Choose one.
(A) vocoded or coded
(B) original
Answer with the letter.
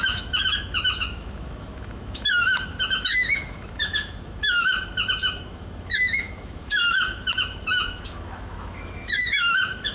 A